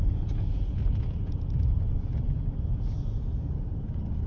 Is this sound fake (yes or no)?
yes